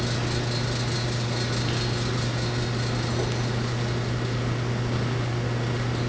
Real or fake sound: real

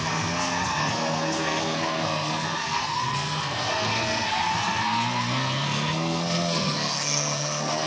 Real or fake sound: fake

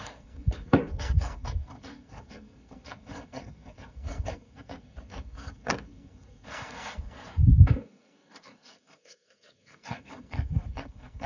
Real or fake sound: fake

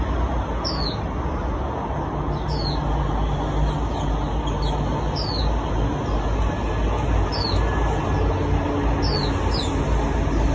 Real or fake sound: real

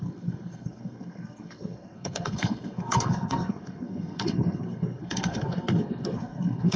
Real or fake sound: fake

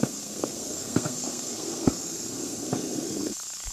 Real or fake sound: fake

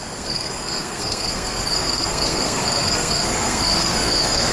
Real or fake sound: fake